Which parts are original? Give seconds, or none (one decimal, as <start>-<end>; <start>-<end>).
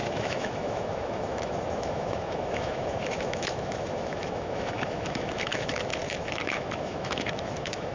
none